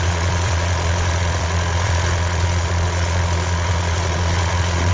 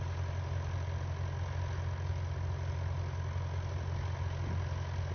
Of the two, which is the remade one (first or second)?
first